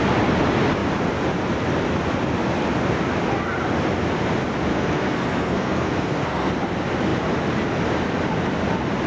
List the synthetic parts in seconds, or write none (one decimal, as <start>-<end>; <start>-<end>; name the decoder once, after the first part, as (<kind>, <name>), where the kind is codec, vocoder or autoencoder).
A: 4.7-6.5 (codec, SNAC)